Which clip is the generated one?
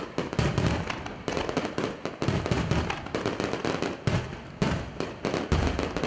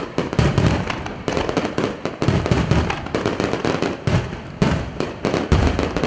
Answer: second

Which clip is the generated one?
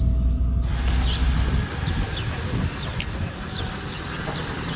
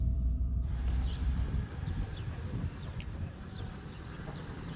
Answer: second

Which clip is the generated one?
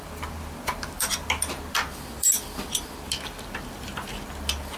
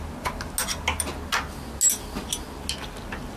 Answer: first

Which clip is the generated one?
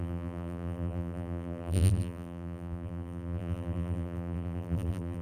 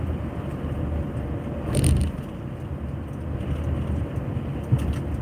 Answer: first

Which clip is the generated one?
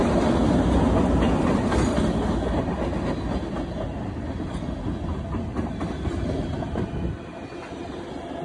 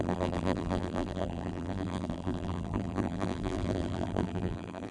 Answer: second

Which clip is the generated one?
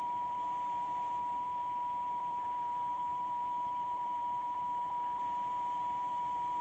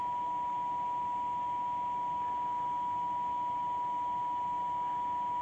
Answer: first